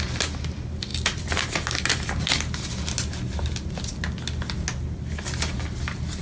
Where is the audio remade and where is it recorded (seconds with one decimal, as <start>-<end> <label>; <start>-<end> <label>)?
0.0-6.2 recorded